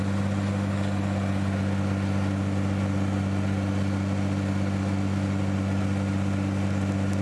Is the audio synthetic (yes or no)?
no